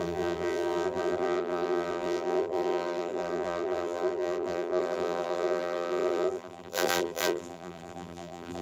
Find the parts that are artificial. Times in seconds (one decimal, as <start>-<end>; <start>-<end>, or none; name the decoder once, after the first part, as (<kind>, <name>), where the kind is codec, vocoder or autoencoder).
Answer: 0.0-8.6 (vocoder, BigVGAN v2)